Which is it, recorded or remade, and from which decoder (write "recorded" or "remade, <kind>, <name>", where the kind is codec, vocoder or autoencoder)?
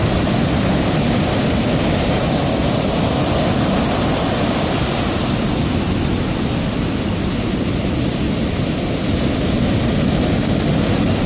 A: recorded